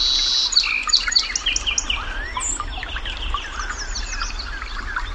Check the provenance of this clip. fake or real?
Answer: real